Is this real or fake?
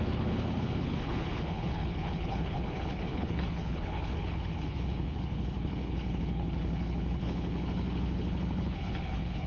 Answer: fake